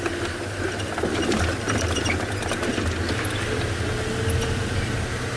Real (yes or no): yes